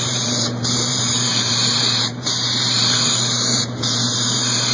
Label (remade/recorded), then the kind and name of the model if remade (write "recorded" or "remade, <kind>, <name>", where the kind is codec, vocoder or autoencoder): remade, vocoder, BigVGAN v2